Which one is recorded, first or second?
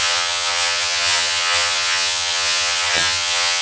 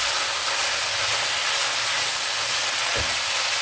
second